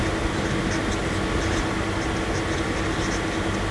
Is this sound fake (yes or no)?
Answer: no